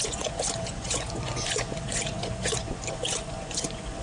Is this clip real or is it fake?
fake